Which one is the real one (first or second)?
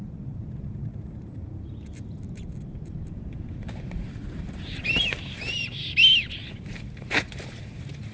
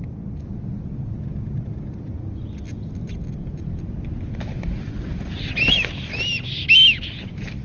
second